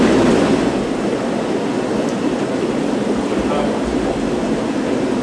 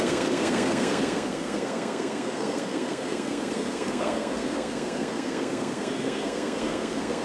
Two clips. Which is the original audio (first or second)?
first